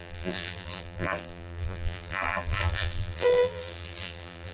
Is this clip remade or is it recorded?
remade